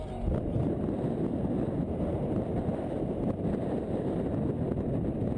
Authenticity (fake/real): real